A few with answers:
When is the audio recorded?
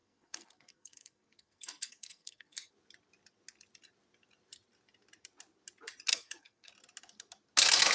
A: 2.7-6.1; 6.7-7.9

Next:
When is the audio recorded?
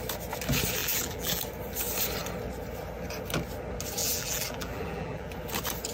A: 0.0-0.8; 1.4-4.0; 5.3-5.9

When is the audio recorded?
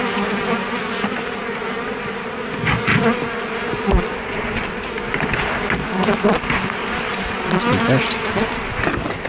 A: 0.0-2.9; 7.6-9.3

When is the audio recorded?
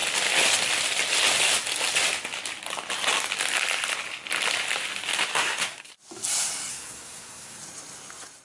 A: 0.0-5.3; 5.9-6.7; 7.6-8.4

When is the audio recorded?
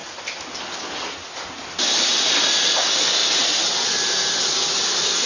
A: 0.0-5.3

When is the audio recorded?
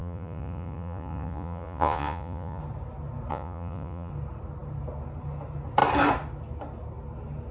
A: 2.6-3.3; 4.1-7.5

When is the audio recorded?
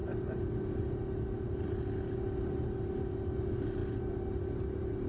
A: 0.8-5.1